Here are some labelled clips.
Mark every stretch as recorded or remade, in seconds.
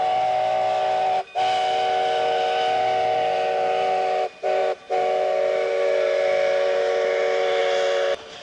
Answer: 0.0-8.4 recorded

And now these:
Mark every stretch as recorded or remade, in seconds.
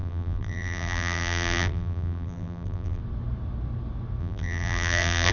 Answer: 0.0-3.0 remade; 3.0-4.2 recorded; 4.2-5.3 remade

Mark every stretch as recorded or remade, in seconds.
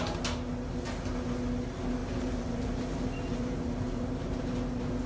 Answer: 0.0-2.0 recorded; 2.0-4.4 remade; 4.4-5.1 recorded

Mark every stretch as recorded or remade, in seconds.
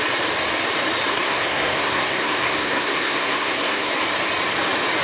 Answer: 0.0-1.1 recorded; 1.1-3.9 remade; 3.9-5.0 recorded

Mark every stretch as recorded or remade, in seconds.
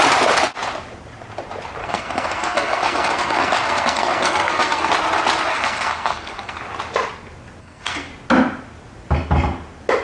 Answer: 0.0-1.8 recorded; 1.8-4.9 remade; 4.9-5.5 recorded; 5.5-6.6 remade; 6.6-7.6 recorded; 7.6-8.1 remade; 8.1-10.0 recorded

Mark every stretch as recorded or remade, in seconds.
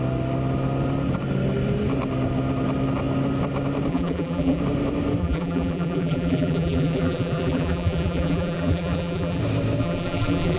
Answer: 0.0-3.9 recorded; 3.9-4.6 remade; 4.6-5.2 recorded; 5.2-9.4 remade; 9.4-9.8 recorded; 9.8-10.6 remade